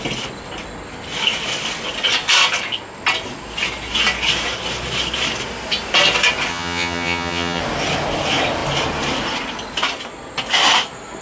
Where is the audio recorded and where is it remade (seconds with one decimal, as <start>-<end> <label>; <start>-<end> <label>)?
0.0-6.5 recorded; 6.5-7.6 remade; 7.6-11.2 recorded